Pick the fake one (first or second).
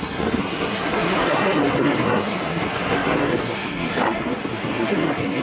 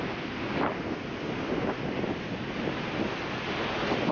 first